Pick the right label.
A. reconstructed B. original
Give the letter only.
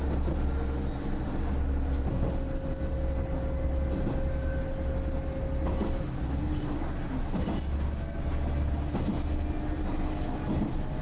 B